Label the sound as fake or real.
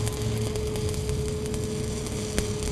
real